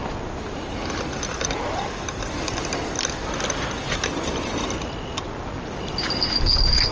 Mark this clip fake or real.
real